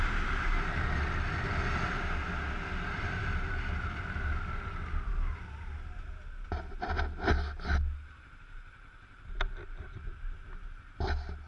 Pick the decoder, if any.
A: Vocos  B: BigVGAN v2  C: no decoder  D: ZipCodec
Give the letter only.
C